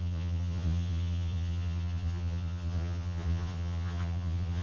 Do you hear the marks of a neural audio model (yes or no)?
yes